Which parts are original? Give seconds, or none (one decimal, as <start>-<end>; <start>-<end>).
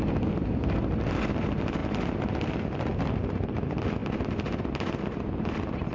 0.0-5.9